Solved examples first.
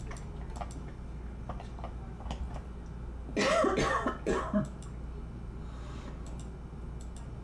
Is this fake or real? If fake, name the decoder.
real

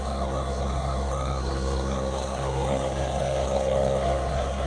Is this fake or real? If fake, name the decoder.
fake, codec, SNAC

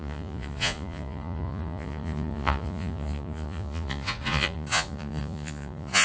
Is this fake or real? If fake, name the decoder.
fake, vocoder, Vocos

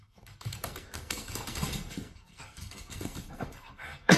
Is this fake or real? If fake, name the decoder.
fake, codec, SNAC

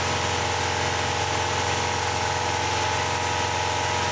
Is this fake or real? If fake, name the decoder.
real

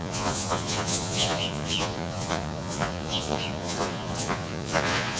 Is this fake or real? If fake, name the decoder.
fake, vocoder, Vocos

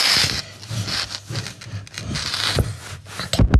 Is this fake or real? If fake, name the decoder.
real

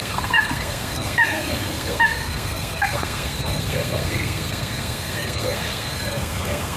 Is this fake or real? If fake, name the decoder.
fake, codec, SNAC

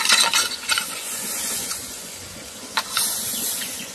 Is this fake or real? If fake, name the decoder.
fake, vocoder, Vocos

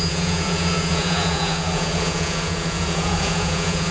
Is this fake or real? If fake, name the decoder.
fake, vocoder, Vocos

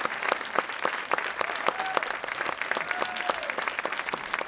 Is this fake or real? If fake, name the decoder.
real